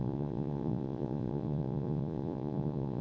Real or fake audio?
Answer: fake